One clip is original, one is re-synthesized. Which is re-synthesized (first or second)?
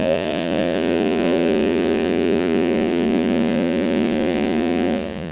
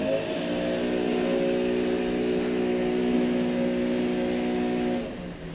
first